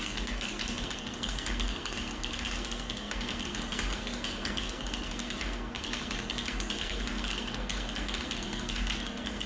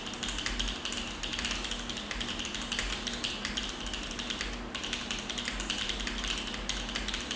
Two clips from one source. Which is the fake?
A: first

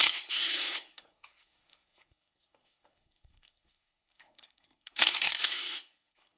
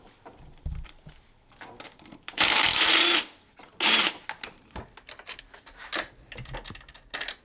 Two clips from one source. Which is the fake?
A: first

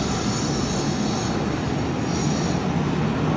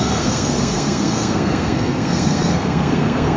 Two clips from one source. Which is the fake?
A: second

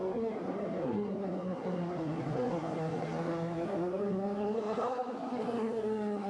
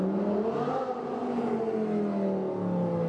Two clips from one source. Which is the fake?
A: first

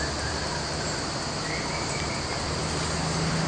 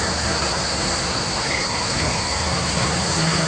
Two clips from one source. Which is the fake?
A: second